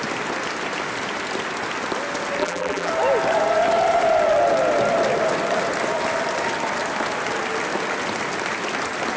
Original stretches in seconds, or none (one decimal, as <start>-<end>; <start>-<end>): 0.0-2.4; 2.9-9.2